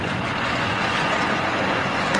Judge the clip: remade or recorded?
remade